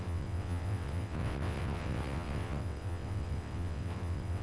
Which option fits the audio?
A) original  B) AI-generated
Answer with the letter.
B